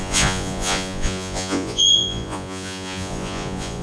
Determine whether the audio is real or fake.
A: fake